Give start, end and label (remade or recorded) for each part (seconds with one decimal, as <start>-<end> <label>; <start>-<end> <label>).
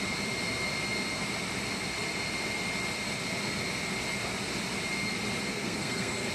0.0-5.5 recorded; 5.5-6.3 remade